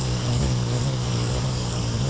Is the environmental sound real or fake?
fake